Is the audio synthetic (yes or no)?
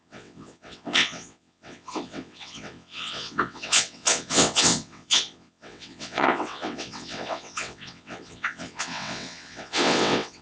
yes